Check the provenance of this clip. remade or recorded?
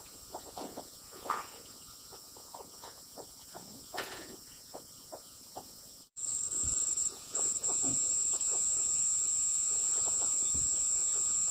remade